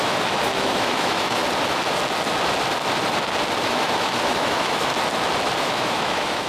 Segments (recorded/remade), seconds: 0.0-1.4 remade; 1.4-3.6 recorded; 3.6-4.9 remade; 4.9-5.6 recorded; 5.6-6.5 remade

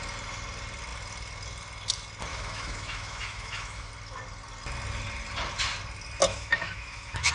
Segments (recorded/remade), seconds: 0.0-2.3 recorded; 2.3-3.9 remade; 3.9-6.3 recorded; 6.3-7.3 remade

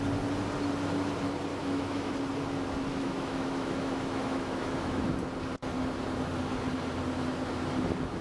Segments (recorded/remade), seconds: 0.0-1.5 recorded; 1.5-2.1 remade; 2.1-2.9 recorded; 2.9-5.1 remade; 5.1-8.2 recorded

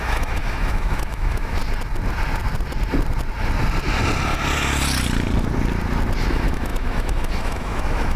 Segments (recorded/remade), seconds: 0.0-1.6 remade; 1.6-6.3 recorded; 6.3-8.2 remade

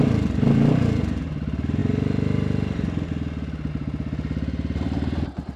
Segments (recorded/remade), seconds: 0.0-5.6 recorded

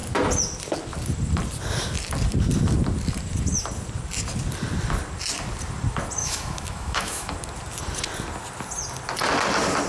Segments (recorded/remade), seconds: 0.0-6.2 recorded; 6.2-7.3 remade; 7.3-9.9 recorded

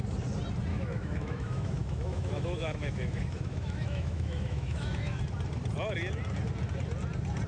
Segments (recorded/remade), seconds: 0.0-0.7 recorded; 0.7-5.2 remade; 5.2-7.5 recorded

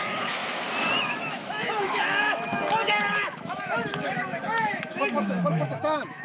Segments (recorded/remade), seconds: 0.0-0.4 remade; 0.4-1.0 recorded; 1.0-6.2 remade